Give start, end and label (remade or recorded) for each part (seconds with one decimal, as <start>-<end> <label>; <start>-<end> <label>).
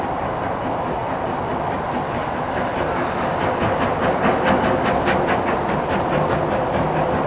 0.0-7.3 recorded